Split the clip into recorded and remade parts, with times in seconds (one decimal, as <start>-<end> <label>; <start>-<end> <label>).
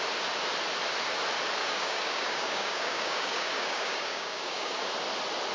0.0-1.6 recorded; 1.6-4.9 remade; 4.9-5.5 recorded